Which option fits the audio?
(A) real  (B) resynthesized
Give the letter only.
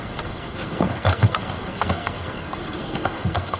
B